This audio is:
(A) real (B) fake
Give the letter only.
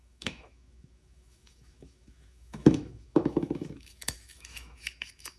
B